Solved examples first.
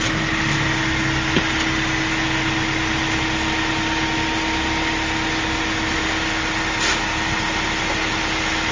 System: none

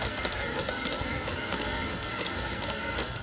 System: codec, SNAC